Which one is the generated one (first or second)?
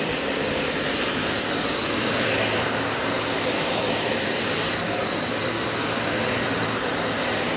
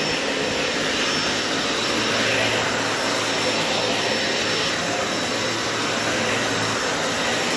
first